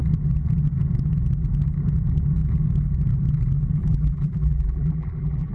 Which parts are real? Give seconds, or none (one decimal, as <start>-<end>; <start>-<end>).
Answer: 0.0-3.8